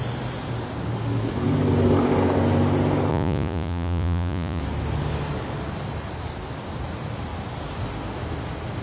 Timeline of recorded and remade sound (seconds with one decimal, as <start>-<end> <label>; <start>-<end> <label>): 0.0-3.1 recorded; 3.1-4.6 remade; 4.6-8.8 recorded